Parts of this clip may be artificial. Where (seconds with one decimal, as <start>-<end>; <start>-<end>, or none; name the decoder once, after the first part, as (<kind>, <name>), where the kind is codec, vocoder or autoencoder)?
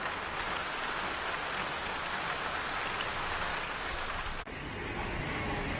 3.5-4.1 (codec, DAC)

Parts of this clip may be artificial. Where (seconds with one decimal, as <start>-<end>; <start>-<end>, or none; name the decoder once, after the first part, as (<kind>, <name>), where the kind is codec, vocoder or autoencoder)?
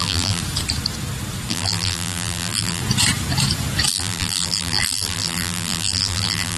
0.0-0.4 (vocoder, BigVGAN v2); 1.5-2.8; 3.9-6.6